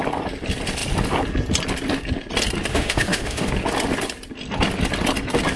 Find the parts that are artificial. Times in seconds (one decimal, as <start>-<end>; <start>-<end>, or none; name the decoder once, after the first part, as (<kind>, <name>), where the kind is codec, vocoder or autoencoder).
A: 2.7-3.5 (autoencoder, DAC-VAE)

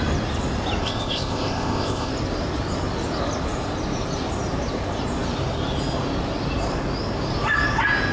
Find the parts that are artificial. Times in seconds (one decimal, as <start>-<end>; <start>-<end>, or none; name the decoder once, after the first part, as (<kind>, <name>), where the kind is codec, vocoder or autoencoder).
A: 0.8-2.1 (codec, ZipCodec)

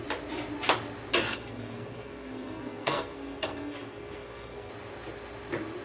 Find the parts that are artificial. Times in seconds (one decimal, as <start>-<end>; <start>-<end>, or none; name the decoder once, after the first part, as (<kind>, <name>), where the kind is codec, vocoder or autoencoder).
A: 1.3-4.7 (codec, SNAC)